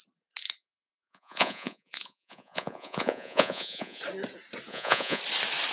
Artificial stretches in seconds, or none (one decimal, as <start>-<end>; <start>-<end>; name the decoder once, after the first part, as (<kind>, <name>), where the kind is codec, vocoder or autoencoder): 0.6-4.0 (vocoder, Vocos); 4.7-5.2